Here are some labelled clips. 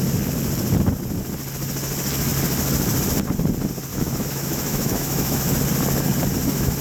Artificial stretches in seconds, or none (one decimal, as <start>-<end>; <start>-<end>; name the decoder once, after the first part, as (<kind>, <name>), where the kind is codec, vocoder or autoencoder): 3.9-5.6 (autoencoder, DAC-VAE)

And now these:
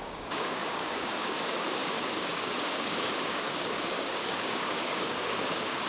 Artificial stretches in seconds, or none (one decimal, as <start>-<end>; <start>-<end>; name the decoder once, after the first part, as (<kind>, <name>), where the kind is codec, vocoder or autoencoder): 0.0-5.9 (codec, DAC)

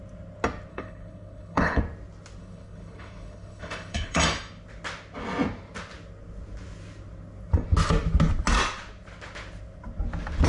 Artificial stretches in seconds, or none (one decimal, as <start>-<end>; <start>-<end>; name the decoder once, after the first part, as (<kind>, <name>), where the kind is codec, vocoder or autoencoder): 0.7-1.8 (codec, HILCodec); 2.4-4.2